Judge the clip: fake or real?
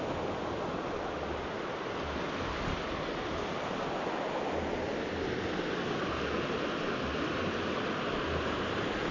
real